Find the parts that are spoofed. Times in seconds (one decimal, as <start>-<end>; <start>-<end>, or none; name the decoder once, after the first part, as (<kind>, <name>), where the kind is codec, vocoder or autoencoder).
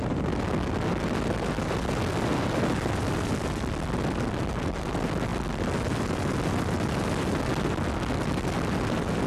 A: none